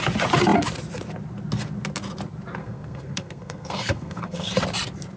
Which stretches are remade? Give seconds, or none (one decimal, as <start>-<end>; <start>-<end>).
2.6-4.5